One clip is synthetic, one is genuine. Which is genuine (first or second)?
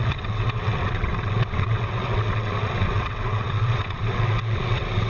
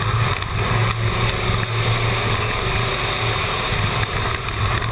second